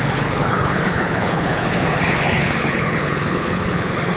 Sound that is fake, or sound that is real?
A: fake